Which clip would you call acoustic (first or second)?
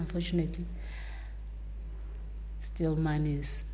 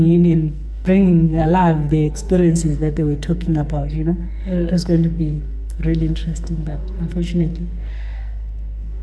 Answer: first